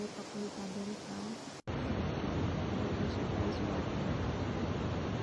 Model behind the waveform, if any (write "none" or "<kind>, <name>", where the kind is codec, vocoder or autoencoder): none